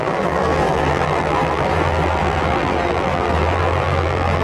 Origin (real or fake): fake